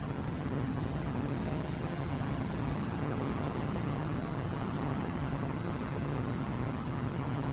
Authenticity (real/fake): fake